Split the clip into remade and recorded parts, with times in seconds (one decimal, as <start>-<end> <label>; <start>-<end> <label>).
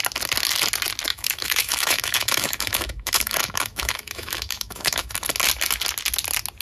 0.0-1.1 recorded; 1.1-5.1 remade; 5.1-6.6 recorded